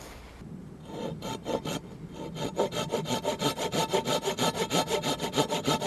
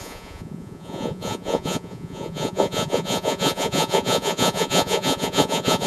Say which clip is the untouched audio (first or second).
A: first